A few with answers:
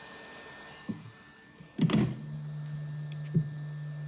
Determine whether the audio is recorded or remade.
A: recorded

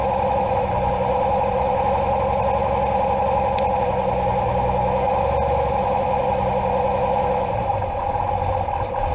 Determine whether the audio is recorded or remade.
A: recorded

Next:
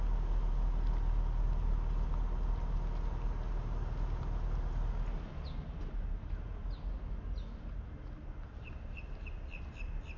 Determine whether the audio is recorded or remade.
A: recorded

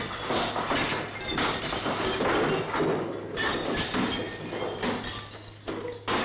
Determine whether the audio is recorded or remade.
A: recorded